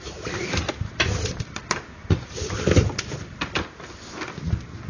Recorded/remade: recorded